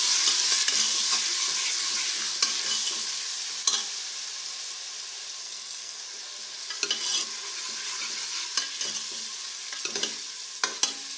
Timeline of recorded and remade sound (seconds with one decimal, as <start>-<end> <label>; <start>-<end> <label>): 0.0-5.4 recorded; 5.4-6.0 remade; 6.0-11.2 recorded